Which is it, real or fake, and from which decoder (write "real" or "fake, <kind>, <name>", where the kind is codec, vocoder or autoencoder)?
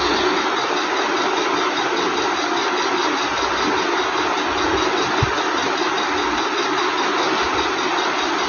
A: real